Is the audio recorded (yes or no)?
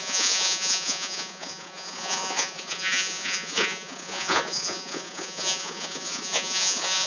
no